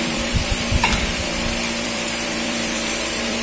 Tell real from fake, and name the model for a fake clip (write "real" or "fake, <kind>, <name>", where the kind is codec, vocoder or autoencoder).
fake, vocoder, BigVGAN v2